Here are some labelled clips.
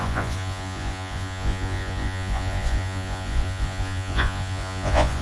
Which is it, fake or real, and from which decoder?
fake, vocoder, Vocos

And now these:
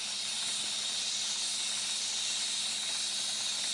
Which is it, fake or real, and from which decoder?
real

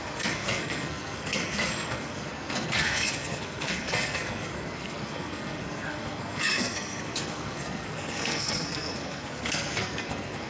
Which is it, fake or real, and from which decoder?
fake, codec, SNAC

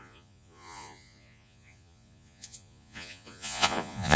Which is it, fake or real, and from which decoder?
fake, vocoder, Vocos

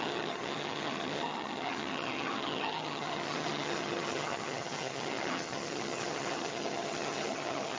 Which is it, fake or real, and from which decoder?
fake, vocoder, HiFi-GAN